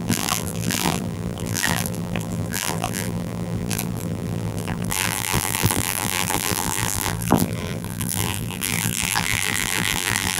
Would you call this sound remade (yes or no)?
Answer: yes